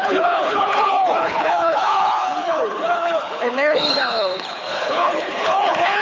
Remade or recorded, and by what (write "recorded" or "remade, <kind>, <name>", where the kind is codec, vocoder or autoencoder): remade, codec, HILCodec